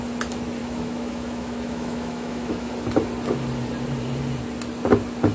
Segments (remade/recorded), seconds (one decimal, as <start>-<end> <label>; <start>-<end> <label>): 0.0-0.6 recorded; 0.6-2.7 remade; 2.7-5.3 recorded